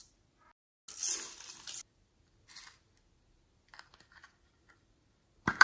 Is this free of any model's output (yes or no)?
yes